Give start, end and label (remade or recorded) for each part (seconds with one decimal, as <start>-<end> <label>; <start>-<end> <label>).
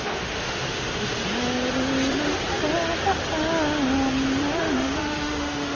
0.0-1.2 remade; 1.2-4.6 recorded; 4.6-5.7 remade